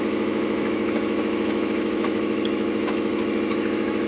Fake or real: fake